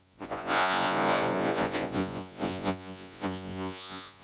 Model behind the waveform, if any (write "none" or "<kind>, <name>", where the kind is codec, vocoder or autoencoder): vocoder, Vocos